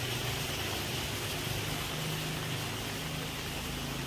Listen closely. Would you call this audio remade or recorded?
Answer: recorded